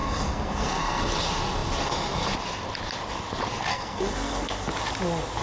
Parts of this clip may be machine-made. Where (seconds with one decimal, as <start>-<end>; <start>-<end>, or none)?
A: 0.0-1.0; 3.7-4.7